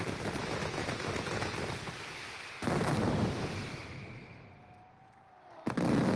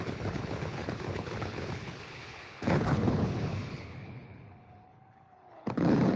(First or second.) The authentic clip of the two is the first